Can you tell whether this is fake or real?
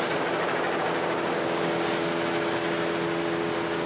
real